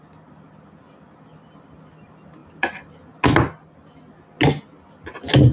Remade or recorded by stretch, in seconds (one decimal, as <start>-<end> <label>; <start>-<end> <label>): 0.0-5.5 recorded